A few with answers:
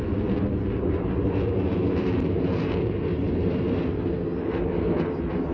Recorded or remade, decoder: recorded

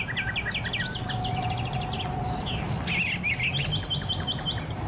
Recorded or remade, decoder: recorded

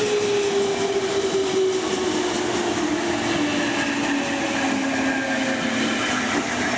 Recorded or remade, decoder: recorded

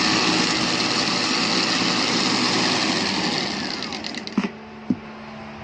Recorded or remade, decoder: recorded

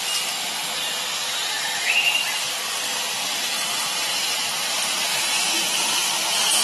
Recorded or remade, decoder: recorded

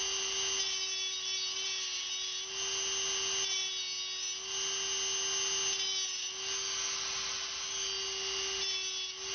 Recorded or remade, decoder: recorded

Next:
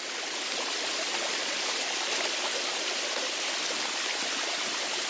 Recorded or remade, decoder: recorded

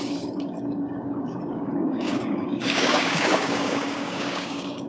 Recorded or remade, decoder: remade, codec, DAC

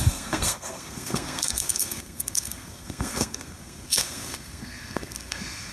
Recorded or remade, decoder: remade, codec, SNAC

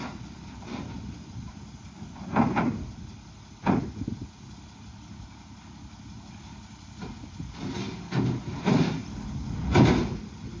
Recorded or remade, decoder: recorded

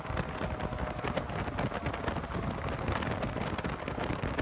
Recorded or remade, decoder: recorded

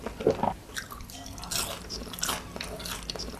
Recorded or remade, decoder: recorded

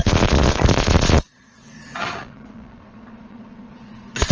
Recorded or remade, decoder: remade, vocoder, Vocos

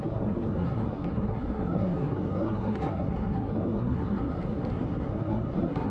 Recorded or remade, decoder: remade, codec, SNAC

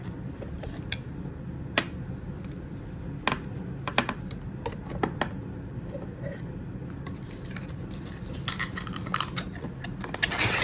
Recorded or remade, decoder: recorded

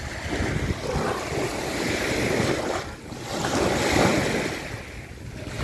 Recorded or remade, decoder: recorded